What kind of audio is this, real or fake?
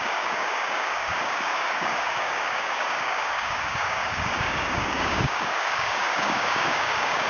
fake